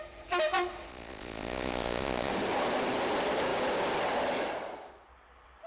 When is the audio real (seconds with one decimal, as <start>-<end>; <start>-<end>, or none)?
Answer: 0.0-0.9; 2.3-5.7